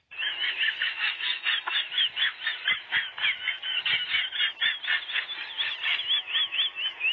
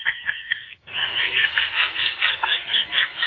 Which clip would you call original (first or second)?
first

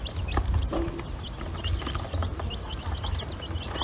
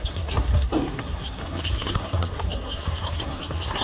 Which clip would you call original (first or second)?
first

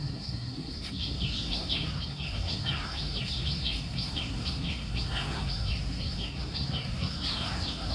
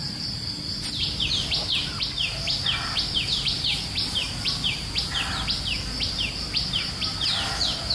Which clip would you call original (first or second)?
second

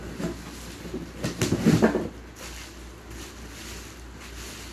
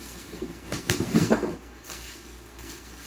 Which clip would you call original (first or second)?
first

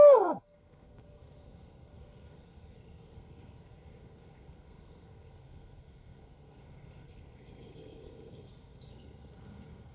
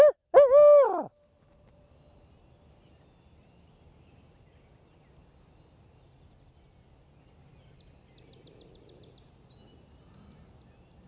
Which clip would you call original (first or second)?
second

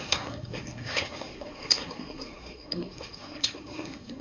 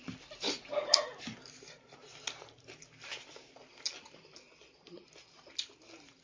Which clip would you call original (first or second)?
second